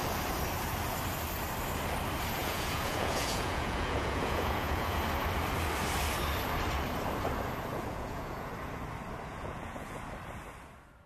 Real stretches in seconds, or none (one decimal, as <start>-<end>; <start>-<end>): 0.0-2.4; 5.0-7.7; 8.5-9.3; 10.0-11.1

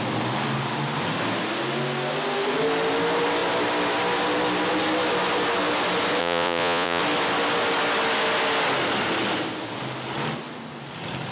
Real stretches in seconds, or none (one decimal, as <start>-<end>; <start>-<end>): 0.0-6.2; 7.0-11.3

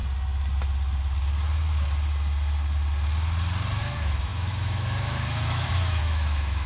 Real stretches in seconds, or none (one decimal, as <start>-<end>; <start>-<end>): 0.0-3.8

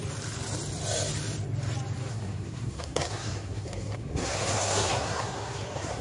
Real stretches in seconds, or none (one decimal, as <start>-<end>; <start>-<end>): 0.0-2.1

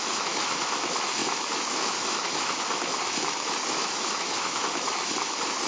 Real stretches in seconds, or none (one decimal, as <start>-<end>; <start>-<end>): none